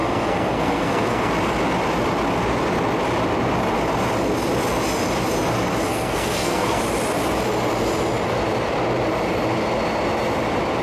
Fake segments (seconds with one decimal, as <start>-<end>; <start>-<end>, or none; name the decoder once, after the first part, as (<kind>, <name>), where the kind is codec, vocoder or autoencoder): 0.0-1.3 (codec, SNAC); 5.9-6.8